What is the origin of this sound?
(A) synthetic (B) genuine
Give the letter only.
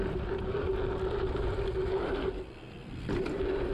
B